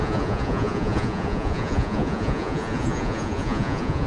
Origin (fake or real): fake